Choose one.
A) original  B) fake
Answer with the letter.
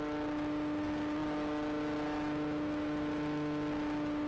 A